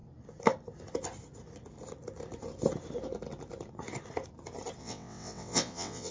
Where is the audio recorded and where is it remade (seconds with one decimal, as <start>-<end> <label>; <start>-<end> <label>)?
0.0-4.8 recorded; 4.8-6.1 remade